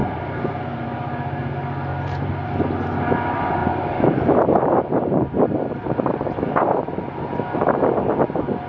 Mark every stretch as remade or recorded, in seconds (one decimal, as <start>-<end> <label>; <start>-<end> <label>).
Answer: 0.0-1.5 remade; 1.5-1.9 recorded; 1.9-2.5 remade; 2.5-3.6 recorded; 3.6-6.8 remade; 6.8-8.7 recorded